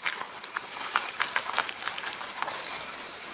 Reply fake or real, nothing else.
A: real